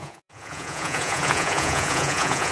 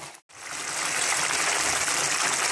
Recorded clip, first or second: second